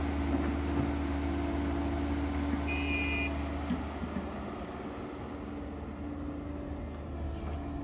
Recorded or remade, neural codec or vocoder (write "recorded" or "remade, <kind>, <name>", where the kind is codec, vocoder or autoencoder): recorded